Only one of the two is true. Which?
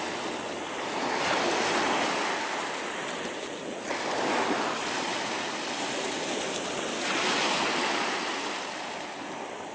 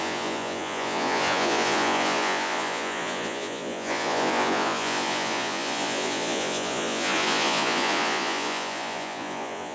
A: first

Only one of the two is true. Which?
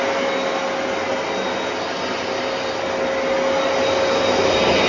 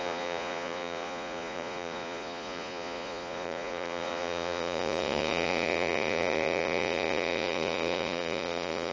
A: first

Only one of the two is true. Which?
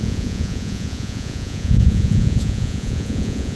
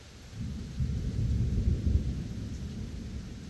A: second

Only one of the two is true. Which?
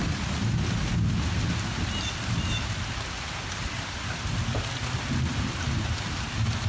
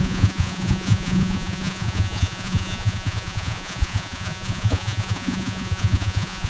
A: first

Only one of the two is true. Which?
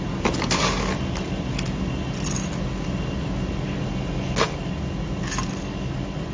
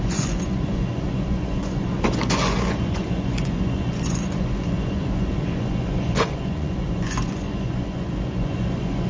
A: first